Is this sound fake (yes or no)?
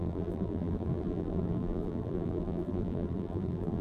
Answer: yes